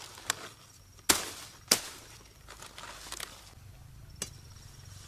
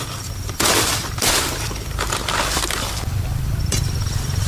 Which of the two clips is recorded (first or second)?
first